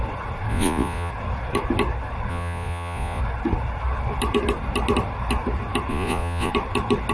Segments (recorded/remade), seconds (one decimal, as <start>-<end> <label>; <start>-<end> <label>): 0.0-0.5 recorded; 0.5-1.1 remade; 1.1-2.3 recorded; 2.3-3.2 remade; 3.2-5.9 recorded; 5.9-6.5 remade; 6.5-7.1 recorded